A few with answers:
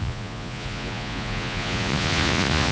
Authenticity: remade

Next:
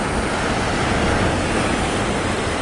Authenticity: recorded